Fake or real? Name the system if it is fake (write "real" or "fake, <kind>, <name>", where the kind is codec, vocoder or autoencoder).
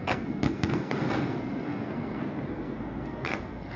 fake, codec, SNAC